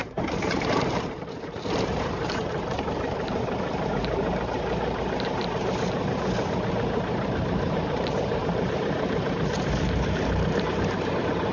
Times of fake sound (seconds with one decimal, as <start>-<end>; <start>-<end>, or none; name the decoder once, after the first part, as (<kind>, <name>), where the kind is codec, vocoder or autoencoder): 0.0-6.0 (vocoder, BigVGAN v2); 6.7-11.5